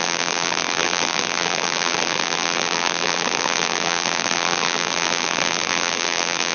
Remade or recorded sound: remade